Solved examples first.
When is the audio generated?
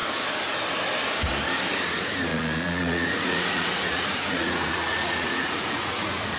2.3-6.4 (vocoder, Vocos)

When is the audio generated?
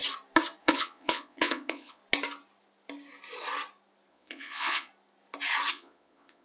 0.6-2.0 (vocoder, Vocos); 4.1-4.9; 5.7-6.4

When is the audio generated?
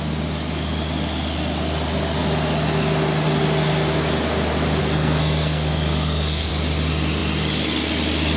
4.8-6.5 (codec, SNAC)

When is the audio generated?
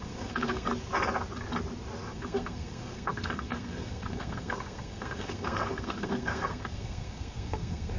0.0-0.7 (codec, SNAC); 2.1-8.0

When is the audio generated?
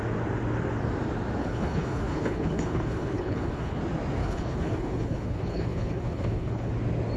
1.4-3.8 (codec, HILCodec); 4.2-6.7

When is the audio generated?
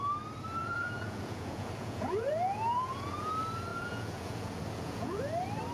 0.6-3.3 (vocoder, Vocos); 3.7-5.2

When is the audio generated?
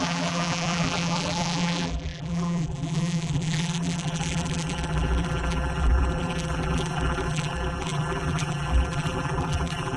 0.0-10.0 (vocoder, BigVGAN v2)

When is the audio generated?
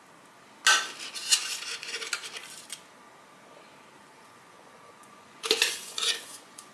1.2-2.0 (vocoder, Vocos); 4.0-6.7